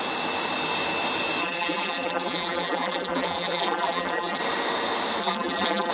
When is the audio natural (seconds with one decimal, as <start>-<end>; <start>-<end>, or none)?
0.0-1.4; 4.4-5.2